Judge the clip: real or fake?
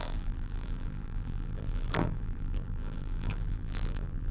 fake